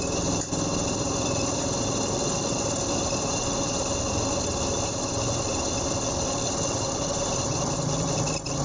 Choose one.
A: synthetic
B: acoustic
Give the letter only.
A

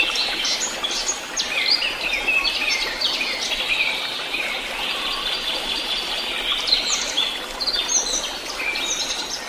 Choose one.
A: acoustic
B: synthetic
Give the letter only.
A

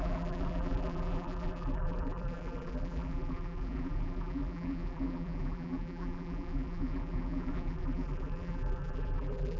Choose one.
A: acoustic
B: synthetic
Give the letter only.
B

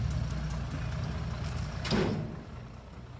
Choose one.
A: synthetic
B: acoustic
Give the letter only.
B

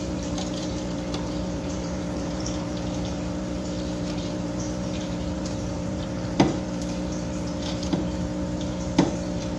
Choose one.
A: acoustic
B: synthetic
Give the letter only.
B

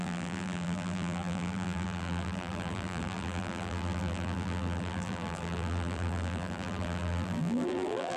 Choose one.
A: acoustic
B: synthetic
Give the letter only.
B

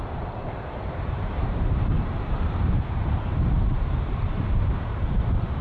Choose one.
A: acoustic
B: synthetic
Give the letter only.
B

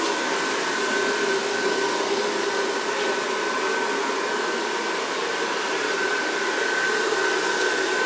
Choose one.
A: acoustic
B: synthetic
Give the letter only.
A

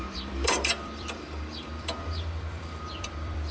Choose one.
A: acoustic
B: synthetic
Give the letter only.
B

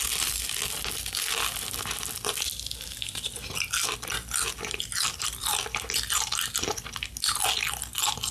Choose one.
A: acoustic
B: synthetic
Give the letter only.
A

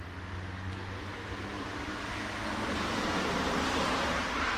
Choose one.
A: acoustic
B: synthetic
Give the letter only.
A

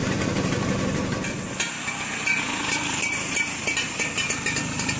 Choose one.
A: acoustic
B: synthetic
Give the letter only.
A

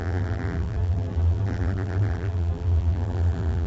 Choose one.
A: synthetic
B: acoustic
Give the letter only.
A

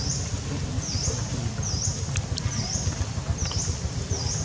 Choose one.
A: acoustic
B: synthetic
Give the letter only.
A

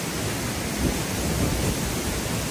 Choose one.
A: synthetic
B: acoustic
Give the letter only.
B